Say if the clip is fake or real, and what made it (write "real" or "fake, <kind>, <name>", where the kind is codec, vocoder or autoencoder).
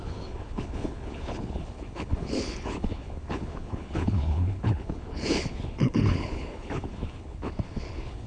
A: fake, codec, HILCodec